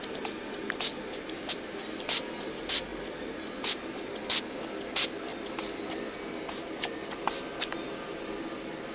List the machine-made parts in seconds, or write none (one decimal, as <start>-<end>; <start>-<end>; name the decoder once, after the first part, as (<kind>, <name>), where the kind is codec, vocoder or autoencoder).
none